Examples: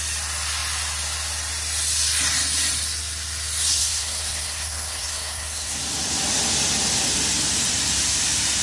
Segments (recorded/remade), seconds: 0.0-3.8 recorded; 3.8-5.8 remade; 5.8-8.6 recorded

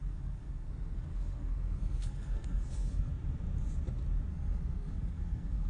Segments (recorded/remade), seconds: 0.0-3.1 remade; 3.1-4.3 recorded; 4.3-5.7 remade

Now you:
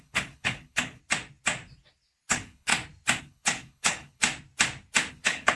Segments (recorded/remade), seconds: 0.0-1.0 remade; 1.0-2.3 recorded; 2.3-2.7 remade; 2.7-3.2 recorded; 3.2-4.2 remade; 4.2-5.1 recorded; 5.1-5.6 remade

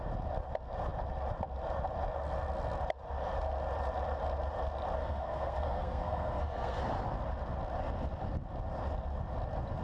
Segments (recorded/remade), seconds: 0.0-5.0 recorded; 5.0-6.8 remade; 6.8-9.8 recorded

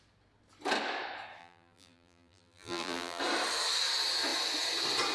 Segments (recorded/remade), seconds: 0.0-1.4 recorded; 1.4-3.2 remade; 3.2-5.1 recorded